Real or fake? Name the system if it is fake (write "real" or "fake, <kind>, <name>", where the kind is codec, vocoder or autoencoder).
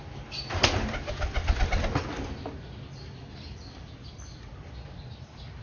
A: real